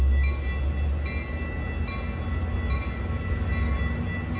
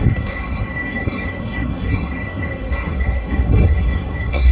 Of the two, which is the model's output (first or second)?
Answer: second